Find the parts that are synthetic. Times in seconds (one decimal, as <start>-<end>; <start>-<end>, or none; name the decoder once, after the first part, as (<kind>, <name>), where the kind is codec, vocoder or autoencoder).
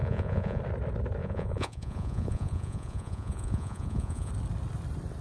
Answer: 0.0-0.6 (vocoder, Vocos); 1.2-4.3